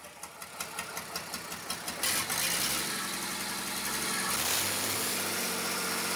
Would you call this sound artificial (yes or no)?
no